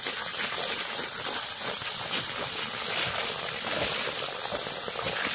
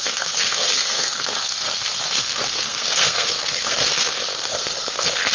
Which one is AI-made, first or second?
second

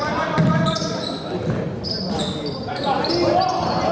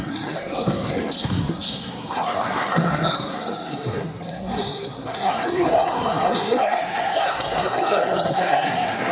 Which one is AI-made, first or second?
second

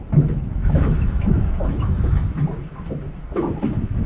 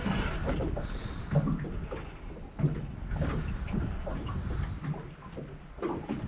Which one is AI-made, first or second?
first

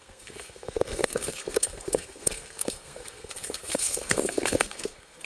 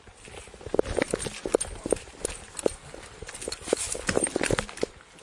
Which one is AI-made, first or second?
first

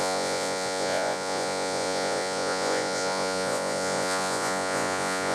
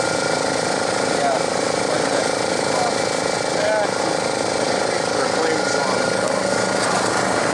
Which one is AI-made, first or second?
first